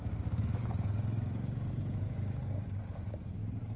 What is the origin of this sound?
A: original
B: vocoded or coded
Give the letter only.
B